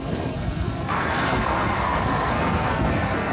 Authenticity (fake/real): fake